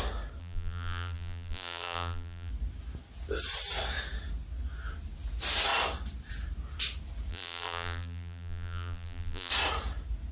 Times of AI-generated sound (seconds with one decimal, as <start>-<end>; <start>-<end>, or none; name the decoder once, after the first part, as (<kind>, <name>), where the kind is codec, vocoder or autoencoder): 0.4-2.5 (vocoder, BigVGAN v2); 7.3-9.5